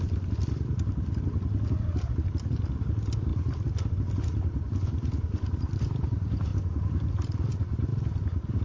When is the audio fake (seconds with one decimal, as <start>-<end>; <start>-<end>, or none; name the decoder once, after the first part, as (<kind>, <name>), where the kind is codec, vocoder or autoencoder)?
none